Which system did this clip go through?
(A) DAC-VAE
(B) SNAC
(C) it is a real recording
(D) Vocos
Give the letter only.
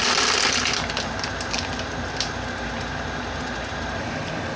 C